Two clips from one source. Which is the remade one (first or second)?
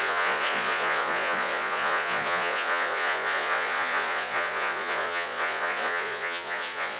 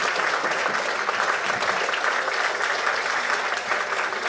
first